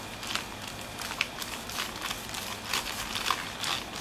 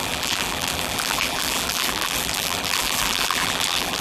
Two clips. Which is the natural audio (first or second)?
first